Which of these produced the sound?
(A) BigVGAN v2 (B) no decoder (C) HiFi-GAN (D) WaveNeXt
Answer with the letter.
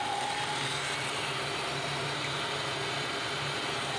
B